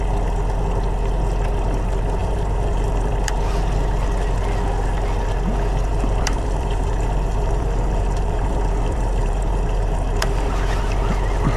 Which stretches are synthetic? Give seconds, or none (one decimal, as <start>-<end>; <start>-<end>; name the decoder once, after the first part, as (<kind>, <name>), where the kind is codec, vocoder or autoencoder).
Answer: 2.2-3.1 (vocoder, BigVGAN v2); 5.9-10.5